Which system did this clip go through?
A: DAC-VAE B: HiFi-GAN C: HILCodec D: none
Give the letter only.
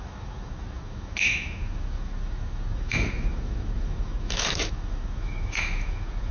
A